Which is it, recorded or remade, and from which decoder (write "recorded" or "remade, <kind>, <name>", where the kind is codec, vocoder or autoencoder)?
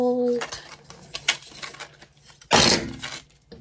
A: recorded